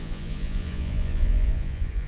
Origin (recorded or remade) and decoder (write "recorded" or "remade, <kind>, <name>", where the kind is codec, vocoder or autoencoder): remade, vocoder, Vocos